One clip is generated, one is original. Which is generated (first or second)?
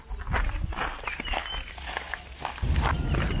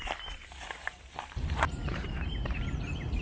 second